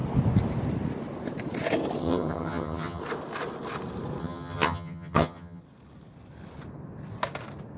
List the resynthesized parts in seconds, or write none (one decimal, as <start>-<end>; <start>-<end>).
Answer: 2.0-3.0; 4.2-5.6